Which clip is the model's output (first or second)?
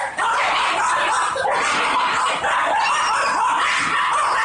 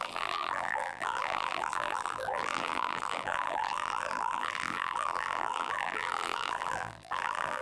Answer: second